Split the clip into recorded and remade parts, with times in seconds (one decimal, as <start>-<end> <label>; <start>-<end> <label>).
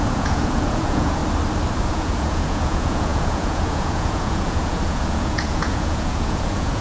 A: 0.0-1.2 remade; 1.2-1.8 recorded; 1.8-6.8 remade